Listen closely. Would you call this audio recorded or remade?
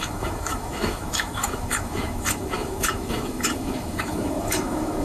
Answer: remade